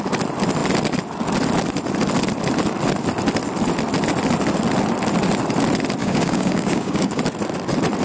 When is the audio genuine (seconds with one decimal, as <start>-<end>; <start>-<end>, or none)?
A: 0.0-6.0; 7.2-8.0